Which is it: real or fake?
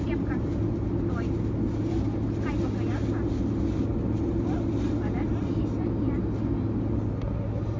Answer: real